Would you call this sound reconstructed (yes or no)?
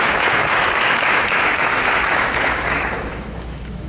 yes